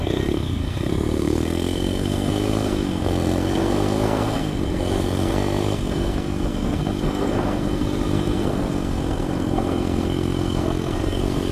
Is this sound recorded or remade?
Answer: remade